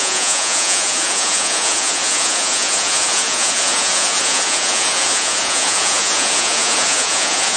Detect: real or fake fake